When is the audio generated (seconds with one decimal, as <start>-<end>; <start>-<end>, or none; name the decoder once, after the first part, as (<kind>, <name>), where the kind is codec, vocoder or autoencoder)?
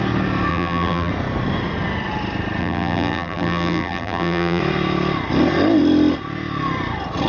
0.5-1.1 (vocoder, BigVGAN v2); 2.6-4.6